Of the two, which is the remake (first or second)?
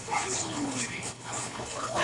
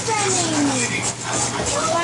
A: first